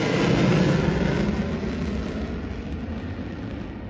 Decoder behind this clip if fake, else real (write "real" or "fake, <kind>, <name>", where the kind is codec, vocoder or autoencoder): real